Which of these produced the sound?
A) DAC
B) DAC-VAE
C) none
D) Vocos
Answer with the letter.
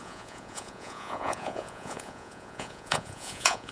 D